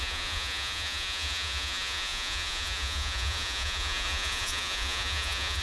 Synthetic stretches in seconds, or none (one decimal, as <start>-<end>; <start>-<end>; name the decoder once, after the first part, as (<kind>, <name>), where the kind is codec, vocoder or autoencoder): 0.0-5.6 (vocoder, Vocos)